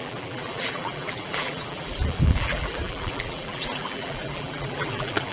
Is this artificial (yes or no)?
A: yes